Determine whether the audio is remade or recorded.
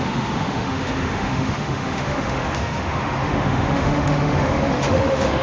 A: remade